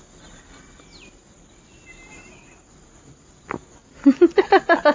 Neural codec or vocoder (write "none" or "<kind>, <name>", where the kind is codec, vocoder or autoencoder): none